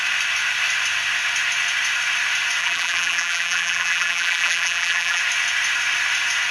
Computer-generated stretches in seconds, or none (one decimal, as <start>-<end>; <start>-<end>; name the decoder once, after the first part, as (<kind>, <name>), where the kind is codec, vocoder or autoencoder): 2.6-5.2 (vocoder, BigVGAN v2)